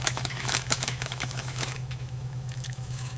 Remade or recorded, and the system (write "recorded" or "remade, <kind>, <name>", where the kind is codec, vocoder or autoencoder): remade, autoencoder, DAC-VAE